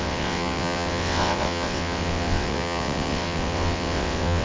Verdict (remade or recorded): remade